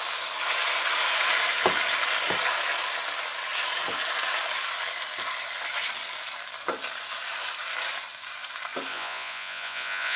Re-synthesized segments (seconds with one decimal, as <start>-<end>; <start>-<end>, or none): 8.9-10.2

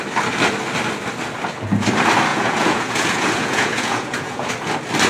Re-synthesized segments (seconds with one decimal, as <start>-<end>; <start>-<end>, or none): 2.3-4.5

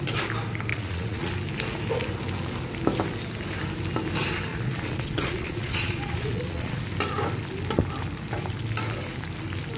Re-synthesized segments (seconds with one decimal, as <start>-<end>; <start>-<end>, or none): 0.7-1.3; 4.5-6.8